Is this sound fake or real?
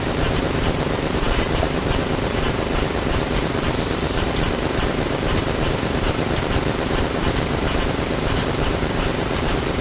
fake